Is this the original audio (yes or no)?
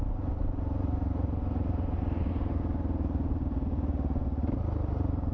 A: yes